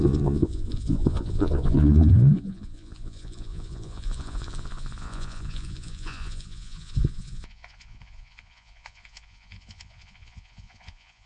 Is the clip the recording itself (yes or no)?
no